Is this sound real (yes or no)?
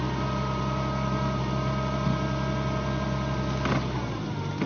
yes